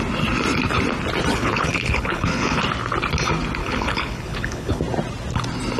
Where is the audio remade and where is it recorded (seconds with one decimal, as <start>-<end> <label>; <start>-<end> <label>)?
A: 0.0-1.3 recorded; 1.3-2.6 remade; 2.6-3.6 recorded; 3.6-4.8 remade; 4.8-5.8 recorded